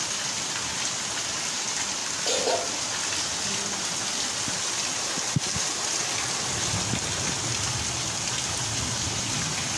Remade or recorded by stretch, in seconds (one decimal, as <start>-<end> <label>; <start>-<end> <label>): 0.0-9.8 recorded